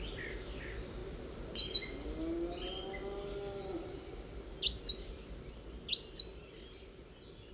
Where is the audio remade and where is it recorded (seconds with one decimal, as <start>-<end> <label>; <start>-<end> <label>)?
0.0-7.5 recorded